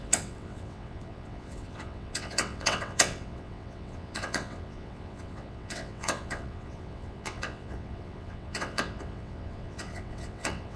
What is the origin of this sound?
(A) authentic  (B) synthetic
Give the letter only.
B